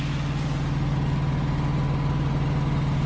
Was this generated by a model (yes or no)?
no